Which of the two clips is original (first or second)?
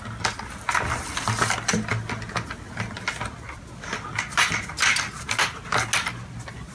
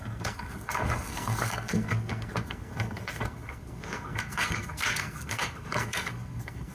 first